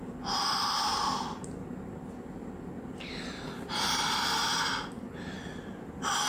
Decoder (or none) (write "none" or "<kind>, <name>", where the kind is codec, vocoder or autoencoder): none